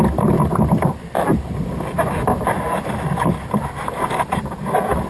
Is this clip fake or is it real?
real